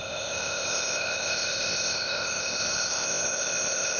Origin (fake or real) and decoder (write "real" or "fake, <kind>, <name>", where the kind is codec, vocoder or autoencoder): fake, codec, ZipCodec